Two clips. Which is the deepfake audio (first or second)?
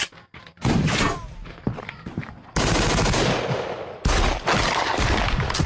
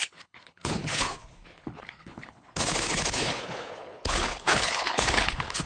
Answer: second